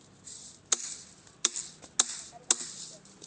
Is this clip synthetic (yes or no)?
no